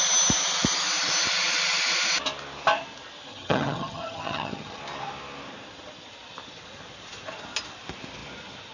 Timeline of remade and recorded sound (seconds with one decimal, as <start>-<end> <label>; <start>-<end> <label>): 0.0-3.3 recorded; 3.3-4.8 remade; 4.8-8.7 recorded